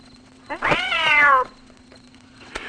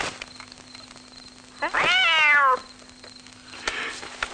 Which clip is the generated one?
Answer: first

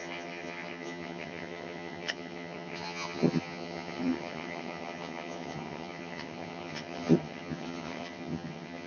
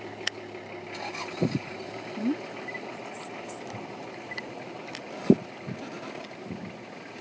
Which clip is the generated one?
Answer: first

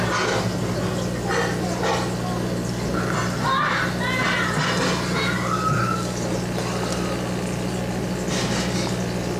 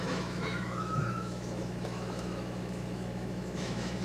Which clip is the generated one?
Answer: second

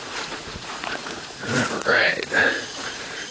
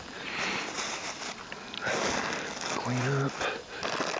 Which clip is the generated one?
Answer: first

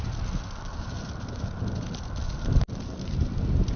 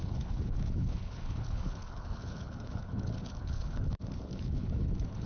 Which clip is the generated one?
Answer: second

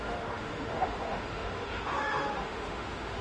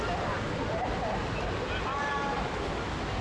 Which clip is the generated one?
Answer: first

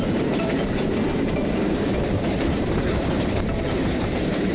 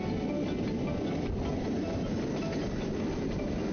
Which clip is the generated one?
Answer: first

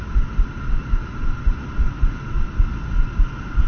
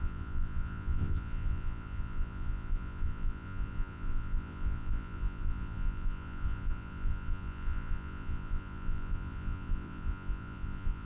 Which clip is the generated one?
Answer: second